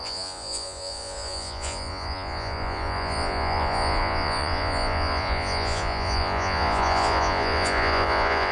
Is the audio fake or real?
fake